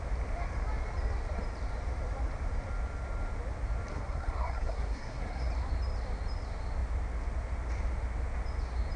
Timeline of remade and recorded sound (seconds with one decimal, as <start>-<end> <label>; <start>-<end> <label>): 0.0-3.9 recorded; 3.9-5.5 remade; 5.5-9.0 recorded